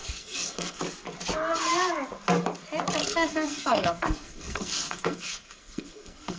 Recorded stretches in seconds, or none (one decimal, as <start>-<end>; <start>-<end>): 0.8-3.0